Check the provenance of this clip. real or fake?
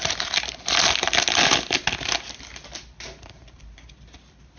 real